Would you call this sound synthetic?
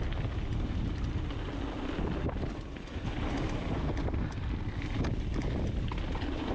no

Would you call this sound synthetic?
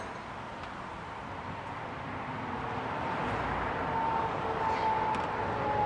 no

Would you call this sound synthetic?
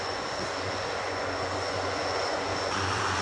yes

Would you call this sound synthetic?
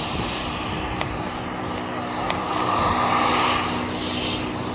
no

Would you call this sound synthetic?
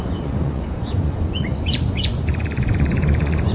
yes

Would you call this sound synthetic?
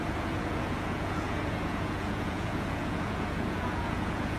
yes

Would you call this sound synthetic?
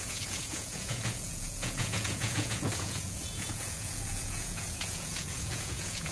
yes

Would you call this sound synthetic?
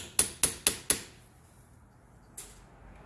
no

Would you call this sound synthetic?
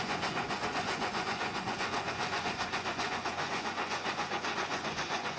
yes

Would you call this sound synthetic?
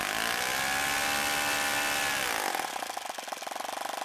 no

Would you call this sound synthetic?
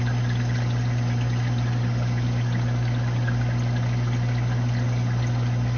no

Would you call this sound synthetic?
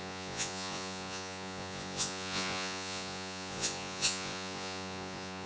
yes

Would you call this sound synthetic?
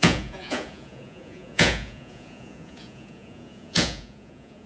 yes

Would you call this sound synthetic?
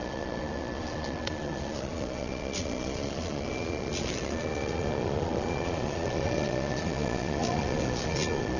yes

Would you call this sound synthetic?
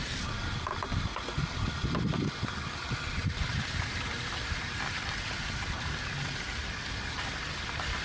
no